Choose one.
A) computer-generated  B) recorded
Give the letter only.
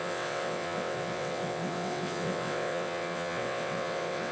A